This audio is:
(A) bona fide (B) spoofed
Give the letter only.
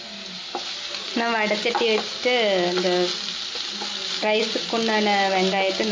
A